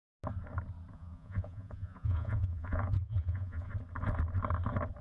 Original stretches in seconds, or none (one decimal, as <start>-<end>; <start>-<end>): 0.0-0.9; 3.7-5.0